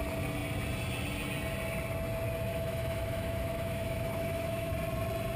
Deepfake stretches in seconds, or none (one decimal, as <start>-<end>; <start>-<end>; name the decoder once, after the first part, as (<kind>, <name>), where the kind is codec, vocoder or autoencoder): 2.5-4.7 (autoencoder, DAC-VAE)